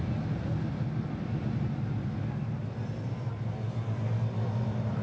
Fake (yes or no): no